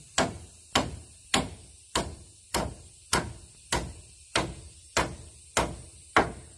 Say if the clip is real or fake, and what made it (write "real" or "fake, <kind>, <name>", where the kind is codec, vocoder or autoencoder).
real